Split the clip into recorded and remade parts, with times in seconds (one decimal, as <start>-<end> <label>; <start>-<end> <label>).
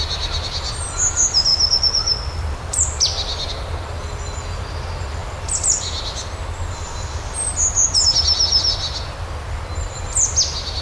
0.0-1.5 recorded; 1.5-3.5 remade; 3.5-10.8 recorded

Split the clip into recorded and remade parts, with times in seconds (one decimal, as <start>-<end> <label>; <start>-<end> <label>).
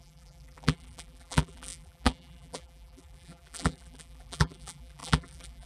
0.0-5.7 remade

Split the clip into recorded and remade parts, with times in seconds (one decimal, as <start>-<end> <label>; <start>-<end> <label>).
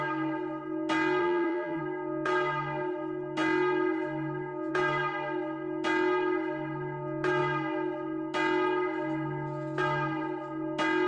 0.0-1.2 recorded; 1.2-1.8 remade; 1.8-11.1 recorded